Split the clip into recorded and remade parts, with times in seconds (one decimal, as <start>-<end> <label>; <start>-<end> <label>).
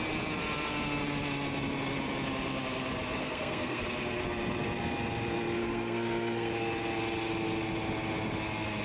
0.0-3.2 recorded; 3.2-3.8 remade; 3.8-5.6 recorded; 5.6-6.5 remade; 6.5-8.8 recorded